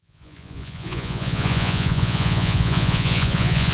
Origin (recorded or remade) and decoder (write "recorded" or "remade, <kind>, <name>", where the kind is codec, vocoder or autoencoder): remade, vocoder, Vocos